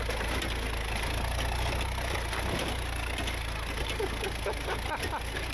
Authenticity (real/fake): real